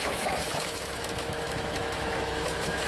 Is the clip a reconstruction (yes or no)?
yes